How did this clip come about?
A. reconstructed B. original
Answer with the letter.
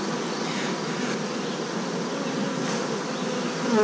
B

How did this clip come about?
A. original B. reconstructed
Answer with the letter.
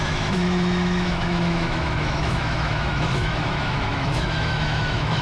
B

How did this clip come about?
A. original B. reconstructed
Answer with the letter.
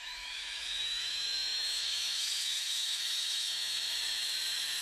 B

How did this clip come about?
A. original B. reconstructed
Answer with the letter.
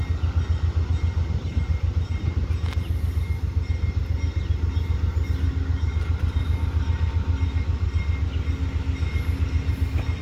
A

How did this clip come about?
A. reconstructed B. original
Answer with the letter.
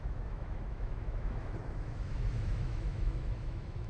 A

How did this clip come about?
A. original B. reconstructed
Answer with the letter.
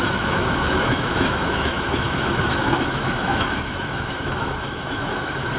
B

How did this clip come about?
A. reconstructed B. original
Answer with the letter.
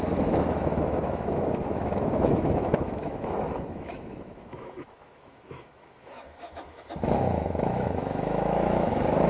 A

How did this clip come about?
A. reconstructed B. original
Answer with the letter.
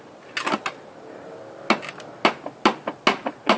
B